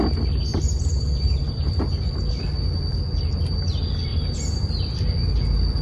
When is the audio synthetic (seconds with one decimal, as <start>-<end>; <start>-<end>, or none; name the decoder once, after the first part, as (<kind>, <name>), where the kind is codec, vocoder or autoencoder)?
0.5-1.8 (vocoder, BigVGAN v2); 4.1-4.8